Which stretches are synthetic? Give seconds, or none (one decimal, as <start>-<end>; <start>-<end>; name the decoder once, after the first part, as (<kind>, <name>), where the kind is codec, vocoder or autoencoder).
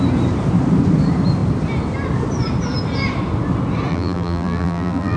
3.9-5.2 (vocoder, BigVGAN v2)